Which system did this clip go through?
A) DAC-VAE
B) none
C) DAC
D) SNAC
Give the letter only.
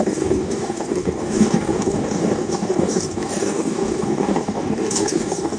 C